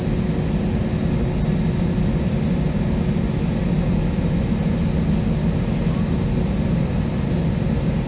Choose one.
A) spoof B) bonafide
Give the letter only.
B